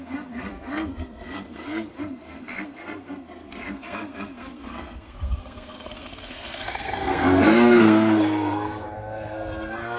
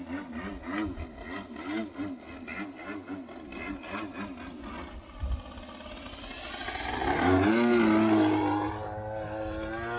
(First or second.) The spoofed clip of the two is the first